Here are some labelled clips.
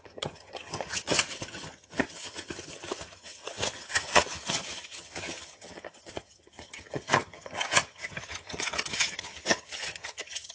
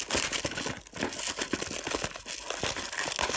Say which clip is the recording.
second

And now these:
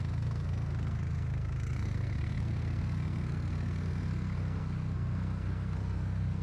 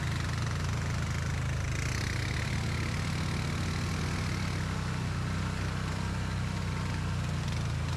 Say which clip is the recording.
second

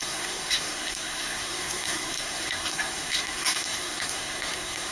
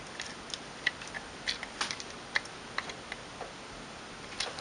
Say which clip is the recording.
second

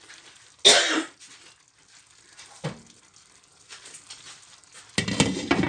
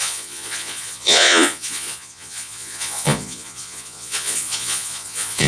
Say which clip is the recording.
first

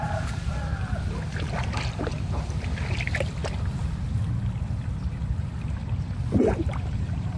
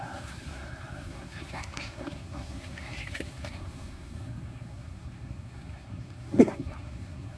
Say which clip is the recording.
first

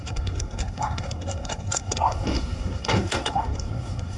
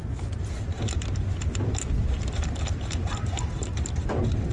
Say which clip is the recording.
second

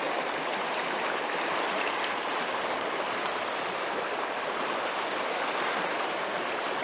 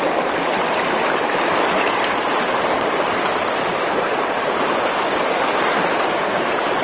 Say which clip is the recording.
first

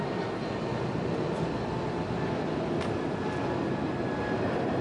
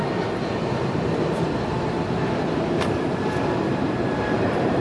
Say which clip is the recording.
first